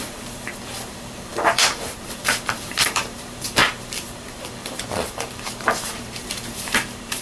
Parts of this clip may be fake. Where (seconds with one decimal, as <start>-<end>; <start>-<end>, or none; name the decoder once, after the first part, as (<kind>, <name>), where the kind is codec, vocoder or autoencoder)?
0.0-7.2 (vocoder, BigVGAN v2)